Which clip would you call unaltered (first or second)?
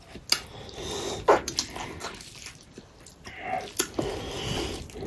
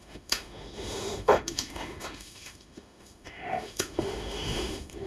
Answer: first